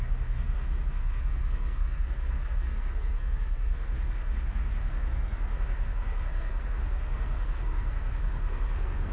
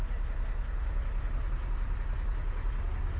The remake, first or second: first